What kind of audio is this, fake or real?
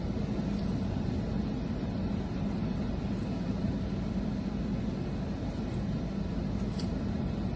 real